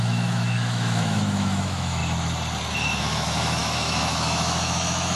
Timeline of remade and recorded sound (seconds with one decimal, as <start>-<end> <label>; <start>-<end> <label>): 0.0-2.0 remade; 2.0-3.0 recorded; 3.0-5.2 remade